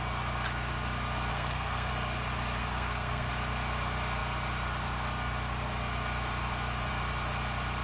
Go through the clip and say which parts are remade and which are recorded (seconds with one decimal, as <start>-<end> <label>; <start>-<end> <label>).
0.0-1.3 recorded; 1.3-1.9 remade; 1.9-2.6 recorded; 2.6-3.3 remade; 3.3-7.8 recorded